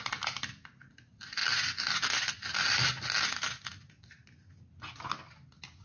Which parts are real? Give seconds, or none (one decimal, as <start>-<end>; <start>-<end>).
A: 0.0-5.8